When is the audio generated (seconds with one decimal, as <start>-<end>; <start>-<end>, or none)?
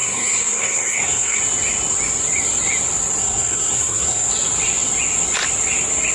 0.0-1.4; 3.2-4.3